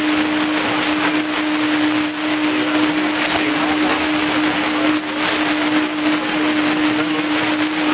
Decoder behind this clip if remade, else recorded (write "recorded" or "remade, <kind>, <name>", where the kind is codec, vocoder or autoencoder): recorded